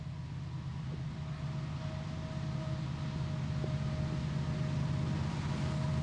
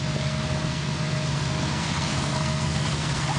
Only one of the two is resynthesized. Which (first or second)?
second